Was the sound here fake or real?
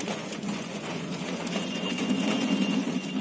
fake